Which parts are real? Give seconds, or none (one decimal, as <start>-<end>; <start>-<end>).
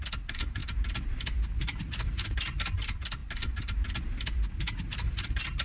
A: 0.0-5.6